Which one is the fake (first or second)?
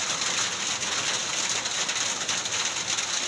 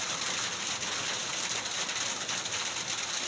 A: second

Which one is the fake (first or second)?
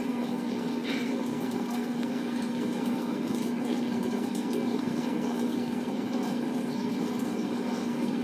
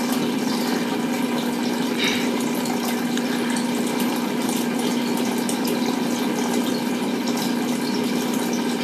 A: first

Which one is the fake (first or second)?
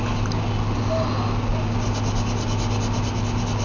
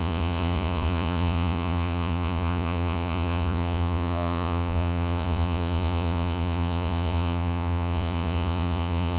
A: second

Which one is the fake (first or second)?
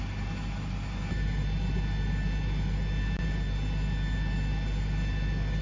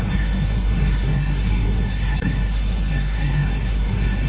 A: second